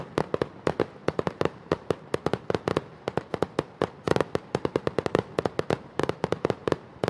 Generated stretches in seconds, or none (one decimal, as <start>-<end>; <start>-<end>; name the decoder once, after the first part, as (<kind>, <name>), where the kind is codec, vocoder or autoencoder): 1.0-2.4 (vocoder, BigVGAN v2); 2.9-7.1